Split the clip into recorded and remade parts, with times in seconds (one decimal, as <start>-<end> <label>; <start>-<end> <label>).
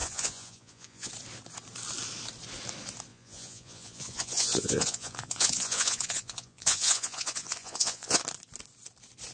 0.0-1.1 remade; 1.1-3.1 recorded; 3.1-8.2 remade; 8.2-9.3 recorded